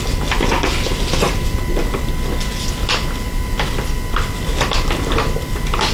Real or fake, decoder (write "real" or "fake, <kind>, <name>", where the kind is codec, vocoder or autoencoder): real